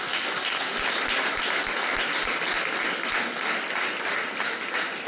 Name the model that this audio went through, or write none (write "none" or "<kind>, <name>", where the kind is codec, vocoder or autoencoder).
none